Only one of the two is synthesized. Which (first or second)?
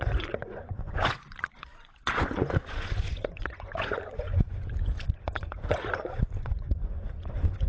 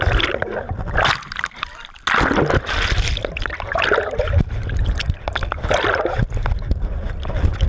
first